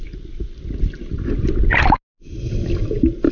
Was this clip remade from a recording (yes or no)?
no